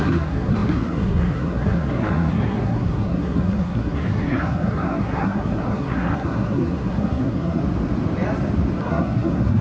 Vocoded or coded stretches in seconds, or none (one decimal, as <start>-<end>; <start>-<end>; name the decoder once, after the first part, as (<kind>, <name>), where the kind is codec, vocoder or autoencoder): 0.0-7.6 (codec, SNAC); 8.8-9.6